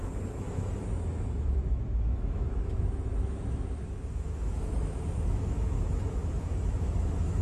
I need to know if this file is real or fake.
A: fake